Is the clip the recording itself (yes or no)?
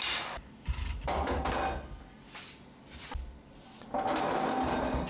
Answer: yes